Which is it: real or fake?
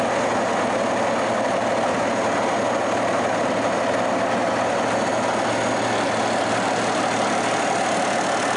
real